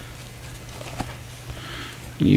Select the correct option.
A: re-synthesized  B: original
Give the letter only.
B